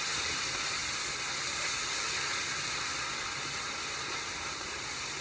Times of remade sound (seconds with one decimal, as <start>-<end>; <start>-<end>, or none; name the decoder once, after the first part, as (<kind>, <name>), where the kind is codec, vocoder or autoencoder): none